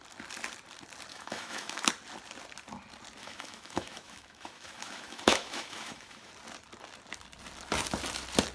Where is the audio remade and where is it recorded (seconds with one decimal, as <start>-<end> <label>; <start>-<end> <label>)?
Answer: 0.0-1.1 recorded; 1.1-1.9 remade; 1.9-3.2 recorded; 3.2-6.3 remade; 6.3-8.5 recorded